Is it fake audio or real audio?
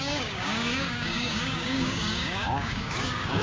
fake